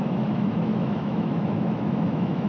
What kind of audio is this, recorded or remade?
remade